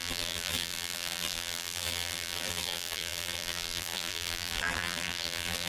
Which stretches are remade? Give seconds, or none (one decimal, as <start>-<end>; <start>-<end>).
0.0-5.7